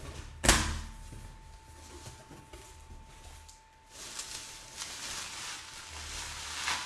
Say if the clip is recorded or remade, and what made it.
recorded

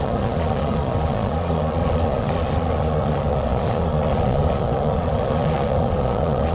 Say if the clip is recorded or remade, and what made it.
remade, vocoder, Vocos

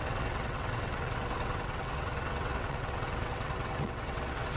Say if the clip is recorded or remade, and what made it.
remade, vocoder, WaveNeXt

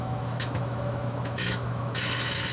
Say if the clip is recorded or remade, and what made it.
remade, autoencoder, DAC-VAE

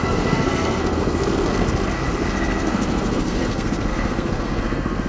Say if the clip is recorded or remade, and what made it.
remade, codec, SNAC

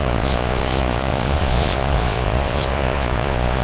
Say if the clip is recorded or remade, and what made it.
remade, vocoder, Vocos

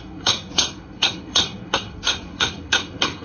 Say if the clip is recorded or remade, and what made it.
remade, codec, SNAC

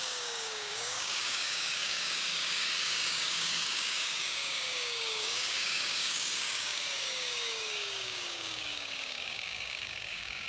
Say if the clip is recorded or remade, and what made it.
remade, codec, DAC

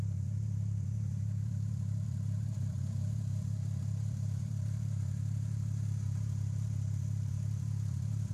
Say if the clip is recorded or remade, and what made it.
remade, vocoder, BigVGAN v2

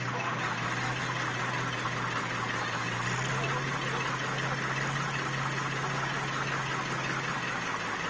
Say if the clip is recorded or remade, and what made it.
recorded